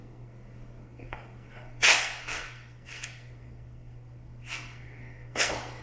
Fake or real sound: fake